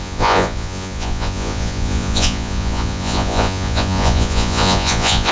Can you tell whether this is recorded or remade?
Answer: remade